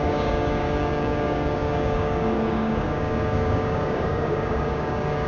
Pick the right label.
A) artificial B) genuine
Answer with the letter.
A